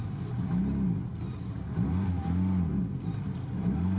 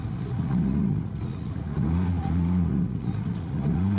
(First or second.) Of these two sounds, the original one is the first